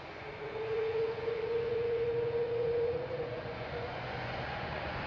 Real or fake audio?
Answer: fake